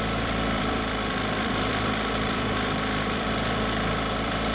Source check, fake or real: fake